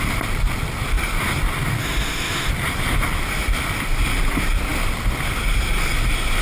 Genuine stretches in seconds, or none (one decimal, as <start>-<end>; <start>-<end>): 0.0-1.8; 2.5-6.4